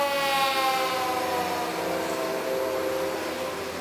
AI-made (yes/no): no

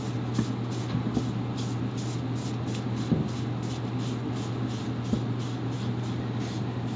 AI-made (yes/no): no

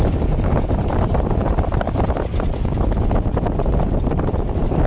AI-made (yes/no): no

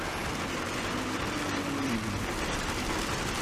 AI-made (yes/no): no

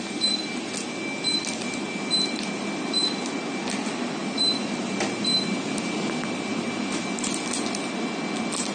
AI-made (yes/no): no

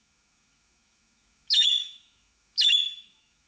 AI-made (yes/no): yes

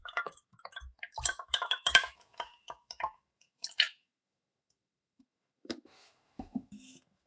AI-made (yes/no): yes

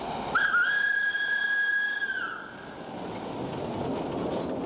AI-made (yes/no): no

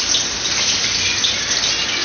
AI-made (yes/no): no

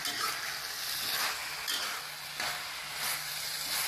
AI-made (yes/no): no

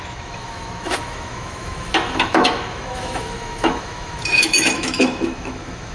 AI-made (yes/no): yes